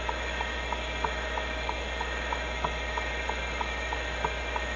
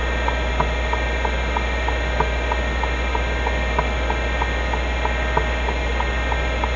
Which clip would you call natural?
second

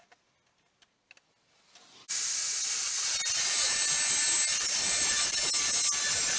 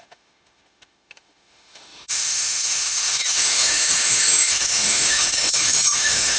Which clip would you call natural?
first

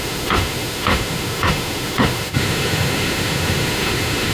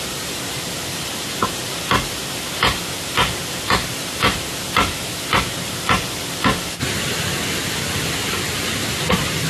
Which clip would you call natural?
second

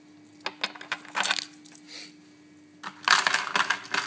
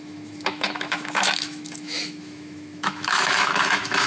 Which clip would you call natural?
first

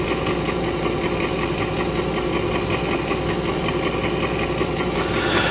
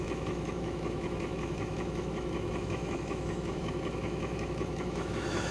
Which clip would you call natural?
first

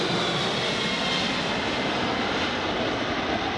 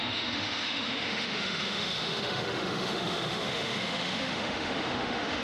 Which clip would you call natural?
first